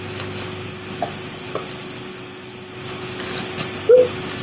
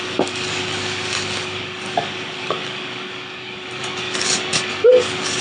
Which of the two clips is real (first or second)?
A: first